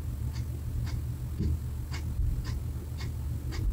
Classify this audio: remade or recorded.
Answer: recorded